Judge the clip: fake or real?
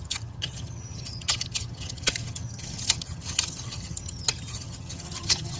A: fake